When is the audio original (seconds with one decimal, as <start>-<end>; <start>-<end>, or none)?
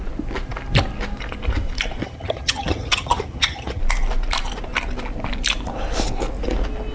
0.0-2.0; 3.8-6.9